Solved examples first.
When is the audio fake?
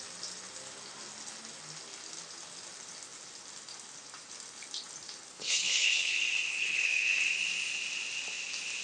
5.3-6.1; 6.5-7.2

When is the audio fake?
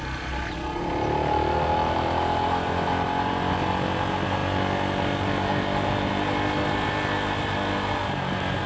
none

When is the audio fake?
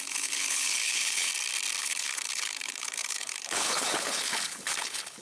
0.0-1.3; 1.8-5.2